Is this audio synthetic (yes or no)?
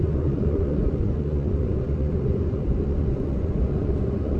yes